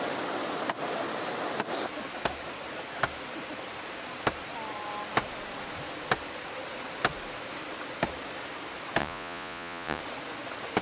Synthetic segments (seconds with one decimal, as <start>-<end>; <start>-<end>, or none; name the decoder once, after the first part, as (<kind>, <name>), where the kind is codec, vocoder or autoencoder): 9.0-10.0 (vocoder, Vocos)